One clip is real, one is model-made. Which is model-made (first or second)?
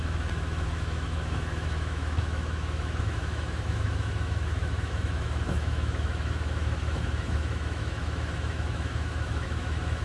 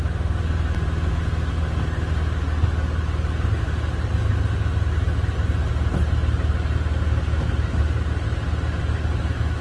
first